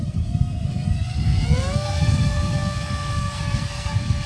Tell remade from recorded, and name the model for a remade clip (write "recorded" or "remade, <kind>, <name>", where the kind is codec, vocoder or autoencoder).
remade, codec, SNAC